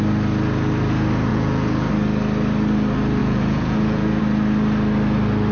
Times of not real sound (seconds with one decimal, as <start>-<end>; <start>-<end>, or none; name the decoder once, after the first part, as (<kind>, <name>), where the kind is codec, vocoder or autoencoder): 1.3-1.9 (vocoder, Vocos); 3.2-4.2